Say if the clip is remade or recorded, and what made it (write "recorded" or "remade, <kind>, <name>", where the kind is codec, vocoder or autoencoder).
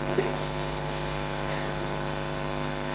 remade, codec, HILCodec